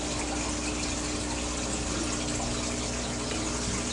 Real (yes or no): yes